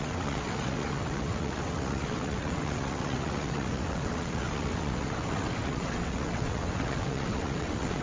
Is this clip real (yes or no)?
no